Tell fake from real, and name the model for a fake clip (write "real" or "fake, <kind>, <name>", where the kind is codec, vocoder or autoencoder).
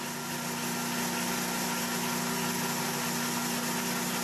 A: real